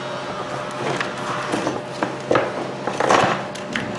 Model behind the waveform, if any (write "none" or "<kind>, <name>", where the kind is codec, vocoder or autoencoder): none